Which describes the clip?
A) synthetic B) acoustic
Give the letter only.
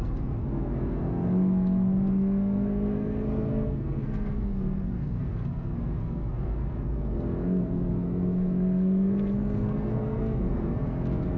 A